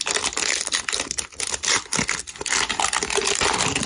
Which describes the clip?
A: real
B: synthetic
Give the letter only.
A